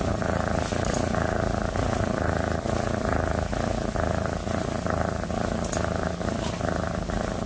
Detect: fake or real real